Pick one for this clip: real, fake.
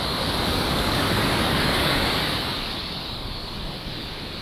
fake